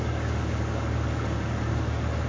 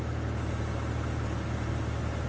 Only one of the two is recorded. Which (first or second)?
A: second